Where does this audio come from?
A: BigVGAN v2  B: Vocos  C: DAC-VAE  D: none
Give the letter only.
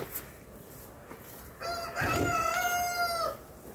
D